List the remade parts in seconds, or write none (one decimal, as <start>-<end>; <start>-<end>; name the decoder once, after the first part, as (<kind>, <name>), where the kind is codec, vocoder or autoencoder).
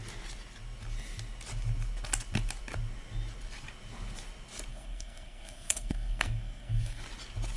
4.7-7.0 (codec, SNAC)